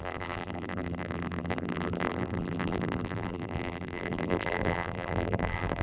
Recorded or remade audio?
remade